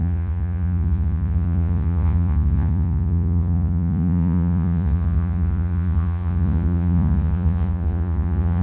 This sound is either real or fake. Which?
fake